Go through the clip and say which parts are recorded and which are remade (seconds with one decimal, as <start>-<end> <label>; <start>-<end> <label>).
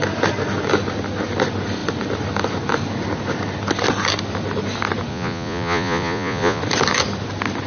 0.0-5.1 recorded; 5.1-6.6 remade; 6.6-7.7 recorded